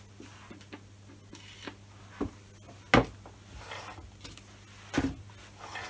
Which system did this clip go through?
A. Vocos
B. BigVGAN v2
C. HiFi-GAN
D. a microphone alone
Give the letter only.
D